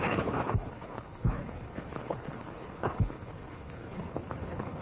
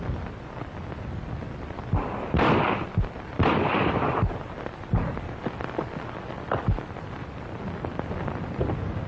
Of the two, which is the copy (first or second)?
first